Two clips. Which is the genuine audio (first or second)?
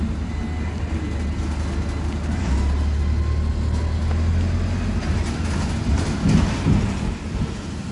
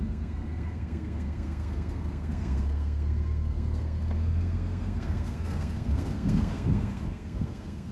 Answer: first